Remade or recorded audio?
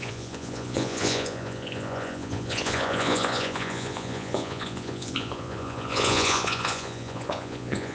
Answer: remade